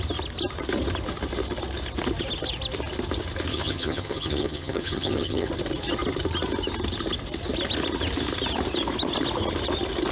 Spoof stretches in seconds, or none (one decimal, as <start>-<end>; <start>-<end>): 3.5-5.5